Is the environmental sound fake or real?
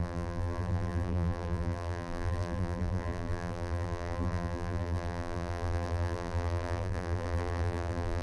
fake